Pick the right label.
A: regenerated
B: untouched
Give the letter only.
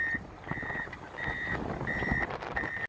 B